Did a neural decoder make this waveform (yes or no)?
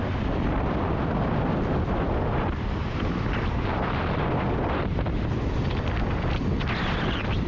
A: yes